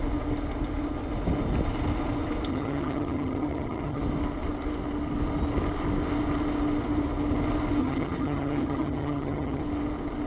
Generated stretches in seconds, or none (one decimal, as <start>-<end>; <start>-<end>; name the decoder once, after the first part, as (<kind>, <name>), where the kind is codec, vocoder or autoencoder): 2.5-4.0 (vocoder, HiFi-GAN); 7.8-9.6